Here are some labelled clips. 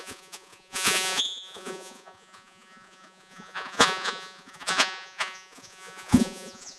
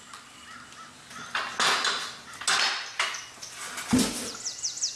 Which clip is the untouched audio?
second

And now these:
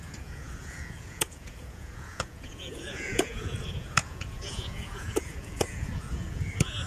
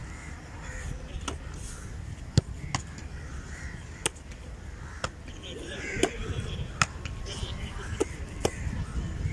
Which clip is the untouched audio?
second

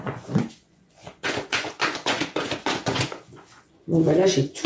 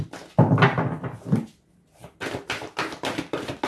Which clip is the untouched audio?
second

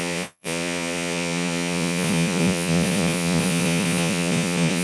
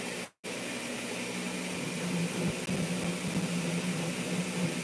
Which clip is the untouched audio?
second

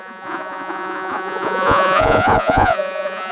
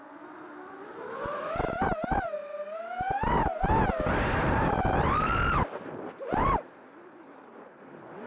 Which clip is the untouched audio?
second